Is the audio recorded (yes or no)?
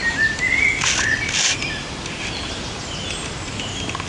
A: yes